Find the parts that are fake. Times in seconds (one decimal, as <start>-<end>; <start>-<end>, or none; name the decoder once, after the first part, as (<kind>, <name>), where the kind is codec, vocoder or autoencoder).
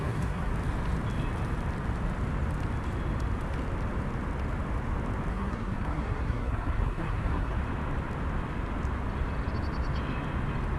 0.0-0.5 (codec, SNAC); 5.3-7.6